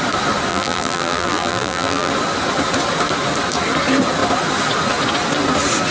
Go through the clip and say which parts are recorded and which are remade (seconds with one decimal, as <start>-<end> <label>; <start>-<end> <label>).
0.0-0.5 recorded; 0.5-2.1 remade; 2.1-5.9 recorded